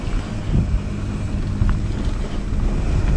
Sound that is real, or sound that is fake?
real